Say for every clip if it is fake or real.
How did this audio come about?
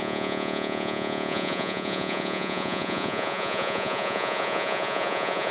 fake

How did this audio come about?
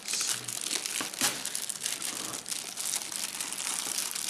real